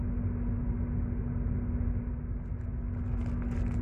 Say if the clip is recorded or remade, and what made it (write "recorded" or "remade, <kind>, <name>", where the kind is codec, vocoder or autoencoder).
recorded